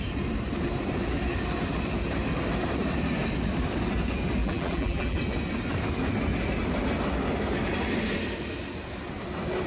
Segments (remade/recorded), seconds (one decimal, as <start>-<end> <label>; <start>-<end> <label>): 0.0-4.4 recorded; 4.4-5.2 remade; 5.2-9.7 recorded